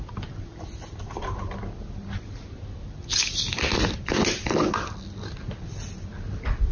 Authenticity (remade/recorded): recorded